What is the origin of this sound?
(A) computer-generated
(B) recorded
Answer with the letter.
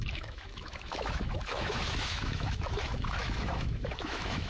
A